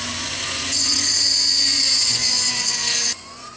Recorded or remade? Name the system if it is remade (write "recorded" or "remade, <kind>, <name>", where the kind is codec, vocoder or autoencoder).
remade, vocoder, Vocos